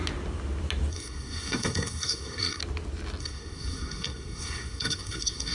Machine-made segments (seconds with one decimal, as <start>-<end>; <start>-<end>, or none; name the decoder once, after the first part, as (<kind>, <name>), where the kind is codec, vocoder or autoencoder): 0.9-2.6 (codec, SNAC); 3.2-5.5